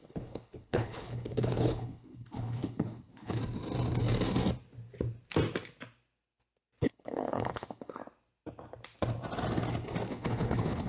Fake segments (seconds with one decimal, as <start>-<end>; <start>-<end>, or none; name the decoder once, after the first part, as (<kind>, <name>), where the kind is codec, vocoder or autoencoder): 0.0-3.4 (codec, HILCodec); 6.8-8.0; 10.1-10.9